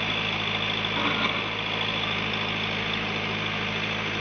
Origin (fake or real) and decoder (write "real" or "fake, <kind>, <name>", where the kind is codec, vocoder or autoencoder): real